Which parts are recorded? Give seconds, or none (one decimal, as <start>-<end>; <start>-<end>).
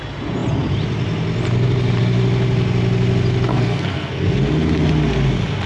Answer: 0.0-3.5; 4.4-5.7